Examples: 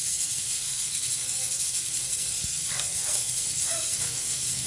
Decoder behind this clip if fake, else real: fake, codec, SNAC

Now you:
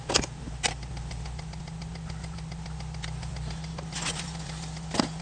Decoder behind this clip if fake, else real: real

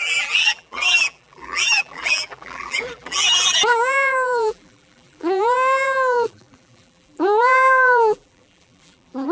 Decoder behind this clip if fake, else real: fake, vocoder, BigVGAN v2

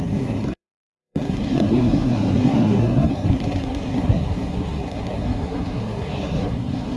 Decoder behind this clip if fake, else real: fake, codec, SNAC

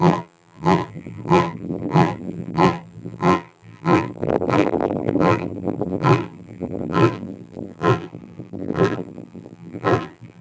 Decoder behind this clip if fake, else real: fake, vocoder, BigVGAN v2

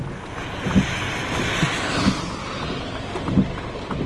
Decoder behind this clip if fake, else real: real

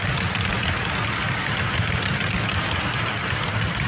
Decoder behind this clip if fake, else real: real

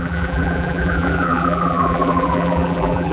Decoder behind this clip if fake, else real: fake, vocoder, BigVGAN v2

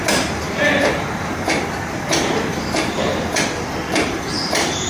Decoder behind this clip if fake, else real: fake, vocoder, BigVGAN v2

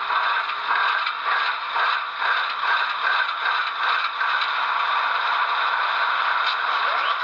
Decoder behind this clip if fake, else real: real